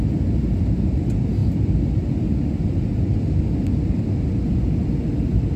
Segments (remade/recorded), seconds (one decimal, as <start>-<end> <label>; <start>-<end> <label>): 0.0-5.6 recorded